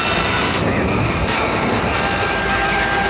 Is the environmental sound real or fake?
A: real